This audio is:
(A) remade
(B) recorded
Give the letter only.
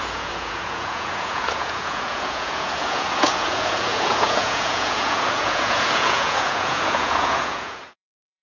A